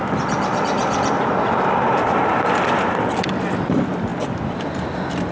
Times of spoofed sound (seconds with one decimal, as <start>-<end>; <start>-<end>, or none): none